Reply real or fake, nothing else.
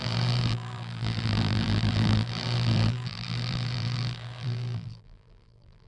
fake